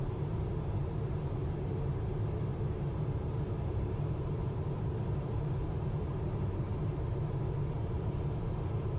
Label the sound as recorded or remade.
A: remade